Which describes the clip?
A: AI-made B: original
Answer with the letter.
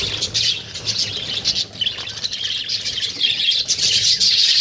B